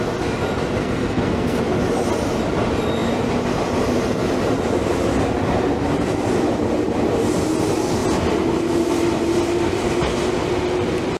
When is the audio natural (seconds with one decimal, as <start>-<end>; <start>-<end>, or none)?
0.0-0.8; 1.6-11.2